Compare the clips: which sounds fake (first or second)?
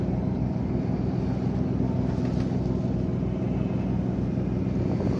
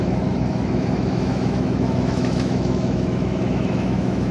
second